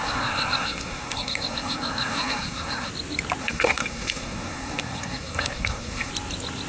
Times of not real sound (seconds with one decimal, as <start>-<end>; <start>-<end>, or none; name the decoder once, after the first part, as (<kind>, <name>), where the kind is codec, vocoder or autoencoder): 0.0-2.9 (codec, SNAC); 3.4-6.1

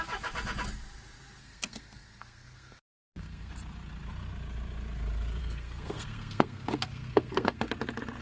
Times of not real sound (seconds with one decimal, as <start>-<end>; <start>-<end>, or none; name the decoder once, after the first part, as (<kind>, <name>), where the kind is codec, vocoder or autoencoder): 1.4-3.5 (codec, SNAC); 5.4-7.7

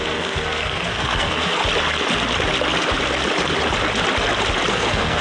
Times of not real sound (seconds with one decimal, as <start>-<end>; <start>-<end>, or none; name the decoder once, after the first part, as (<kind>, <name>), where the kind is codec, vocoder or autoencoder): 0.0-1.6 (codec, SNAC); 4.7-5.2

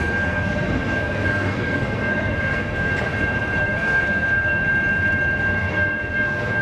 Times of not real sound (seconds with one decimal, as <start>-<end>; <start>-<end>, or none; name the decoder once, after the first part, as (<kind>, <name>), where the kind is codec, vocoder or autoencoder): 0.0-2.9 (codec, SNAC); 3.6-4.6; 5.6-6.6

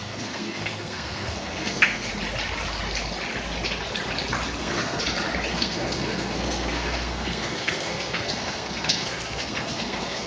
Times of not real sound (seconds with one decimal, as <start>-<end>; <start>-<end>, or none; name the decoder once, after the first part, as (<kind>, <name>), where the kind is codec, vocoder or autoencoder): 0.0-2.1 (codec, SNAC); 4.6-5.0; 5.5-10.3